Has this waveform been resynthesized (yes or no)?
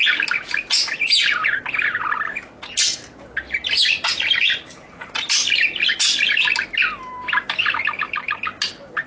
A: no